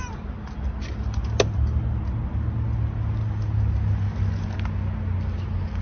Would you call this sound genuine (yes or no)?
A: yes